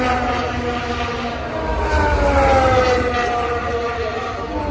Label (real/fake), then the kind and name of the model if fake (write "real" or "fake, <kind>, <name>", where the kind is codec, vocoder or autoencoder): real